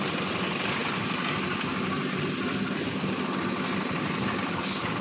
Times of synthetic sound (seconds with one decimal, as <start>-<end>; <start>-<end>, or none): none